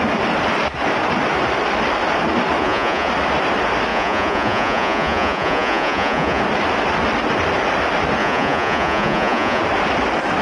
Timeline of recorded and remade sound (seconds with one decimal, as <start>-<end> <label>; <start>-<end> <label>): 0.0-2.6 recorded; 2.6-3.1 remade; 3.1-3.9 recorded; 3.9-6.4 remade; 6.4-8.2 recorded; 8.2-9.6 remade; 9.6-10.4 recorded